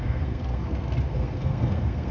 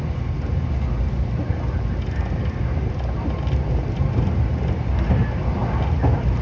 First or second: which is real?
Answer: second